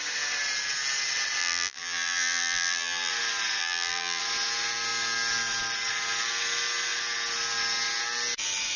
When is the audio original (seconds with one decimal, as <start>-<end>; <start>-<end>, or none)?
0.0-1.4; 3.1-3.6; 4.2-8.8